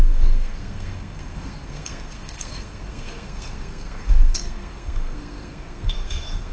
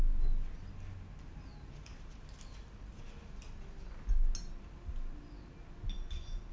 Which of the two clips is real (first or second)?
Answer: second